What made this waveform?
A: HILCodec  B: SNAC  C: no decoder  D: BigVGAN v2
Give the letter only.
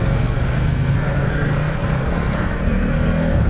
B